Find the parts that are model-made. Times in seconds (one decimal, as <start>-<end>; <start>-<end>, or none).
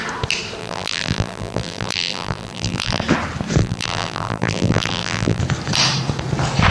0.6-3.0; 3.6-5.4